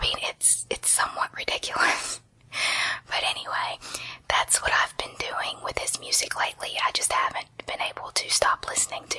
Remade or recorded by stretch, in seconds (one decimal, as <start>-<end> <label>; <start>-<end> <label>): 0.0-2.0 remade; 2.0-3.0 recorded; 3.0-7.2 remade; 7.2-8.3 recorded; 8.3-9.2 remade